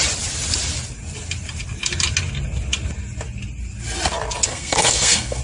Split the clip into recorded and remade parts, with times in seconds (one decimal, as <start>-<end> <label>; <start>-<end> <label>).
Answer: 0.0-4.5 recorded; 4.5-5.4 remade